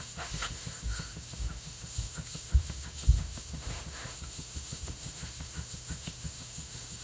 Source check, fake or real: fake